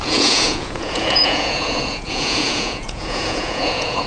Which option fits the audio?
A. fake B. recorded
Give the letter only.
A